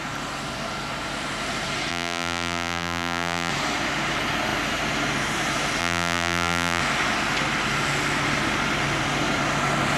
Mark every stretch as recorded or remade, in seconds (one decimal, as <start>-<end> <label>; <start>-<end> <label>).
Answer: 0.0-1.9 recorded; 1.9-3.5 remade; 3.5-5.8 recorded; 5.8-6.8 remade; 6.8-10.0 recorded

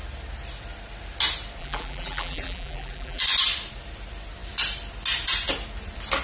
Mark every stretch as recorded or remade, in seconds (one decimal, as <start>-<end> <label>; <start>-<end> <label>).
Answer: 0.0-1.6 recorded; 1.6-3.2 remade; 3.2-6.2 recorded

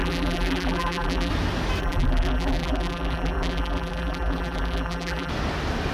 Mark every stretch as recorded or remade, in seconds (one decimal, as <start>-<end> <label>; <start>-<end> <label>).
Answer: 0.0-1.3 remade; 1.3-1.8 recorded; 1.8-5.3 remade; 5.3-5.9 recorded

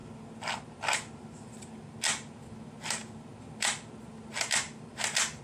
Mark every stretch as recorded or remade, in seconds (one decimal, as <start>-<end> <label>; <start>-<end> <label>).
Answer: 0.0-5.4 recorded

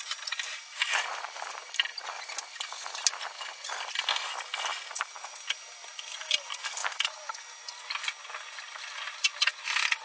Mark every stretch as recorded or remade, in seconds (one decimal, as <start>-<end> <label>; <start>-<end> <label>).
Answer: 0.0-6.8 recorded; 6.8-7.3 remade; 7.3-10.0 recorded

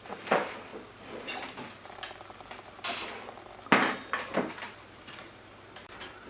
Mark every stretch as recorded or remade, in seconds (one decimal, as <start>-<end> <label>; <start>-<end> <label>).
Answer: 0.0-0.7 remade; 0.7-4.5 recorded; 4.5-6.3 remade